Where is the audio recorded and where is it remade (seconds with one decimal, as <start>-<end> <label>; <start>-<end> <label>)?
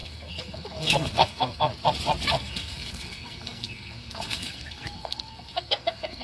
0.0-1.7 remade; 1.7-2.3 recorded; 2.3-6.2 remade